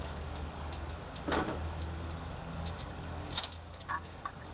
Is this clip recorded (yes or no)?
no